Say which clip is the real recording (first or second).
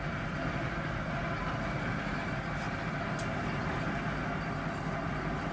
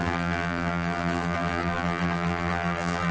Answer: first